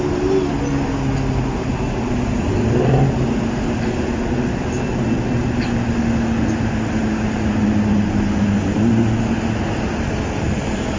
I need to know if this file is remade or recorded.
recorded